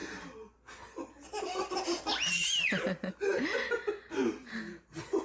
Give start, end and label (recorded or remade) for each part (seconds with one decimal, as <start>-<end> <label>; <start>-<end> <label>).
0.0-5.2 recorded